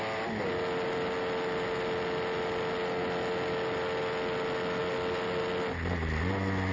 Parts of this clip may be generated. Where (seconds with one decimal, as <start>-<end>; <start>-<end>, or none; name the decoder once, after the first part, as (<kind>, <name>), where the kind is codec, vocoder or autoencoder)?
none